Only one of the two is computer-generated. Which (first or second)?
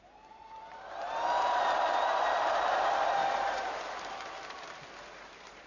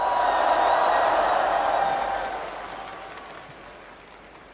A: first